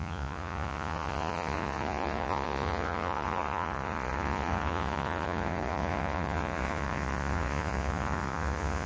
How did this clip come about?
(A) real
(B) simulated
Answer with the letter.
B